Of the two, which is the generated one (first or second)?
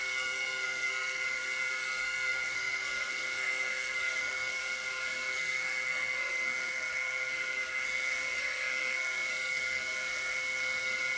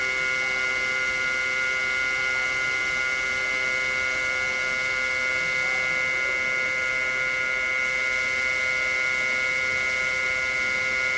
first